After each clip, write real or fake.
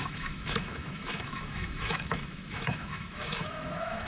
fake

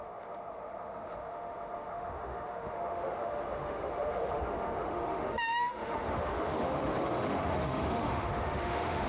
fake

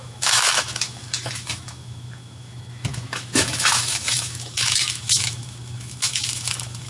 fake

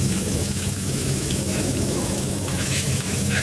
fake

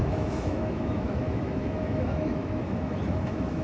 fake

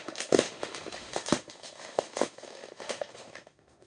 fake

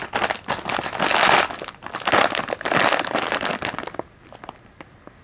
real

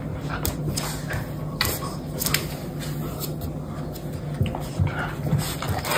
real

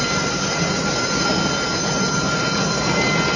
real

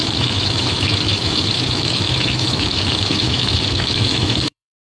fake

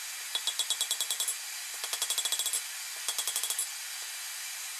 real